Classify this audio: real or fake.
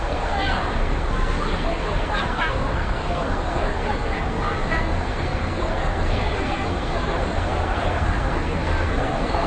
fake